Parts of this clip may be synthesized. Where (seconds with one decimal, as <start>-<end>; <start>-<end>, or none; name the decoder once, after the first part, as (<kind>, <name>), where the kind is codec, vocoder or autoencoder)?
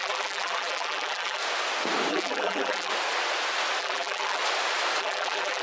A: 0.0-1.4 (vocoder, BigVGAN v2); 2.1-2.9; 3.8-4.4; 5.0-5.6